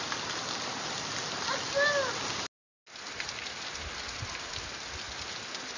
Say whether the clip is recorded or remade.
recorded